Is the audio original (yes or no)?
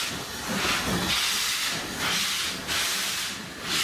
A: yes